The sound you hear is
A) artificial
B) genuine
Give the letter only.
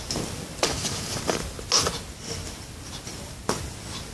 B